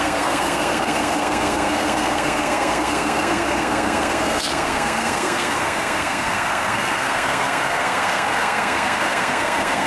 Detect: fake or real fake